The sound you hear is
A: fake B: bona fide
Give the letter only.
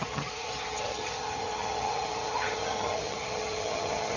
A